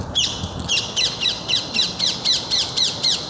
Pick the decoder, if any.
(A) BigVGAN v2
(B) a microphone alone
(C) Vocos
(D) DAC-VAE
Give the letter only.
B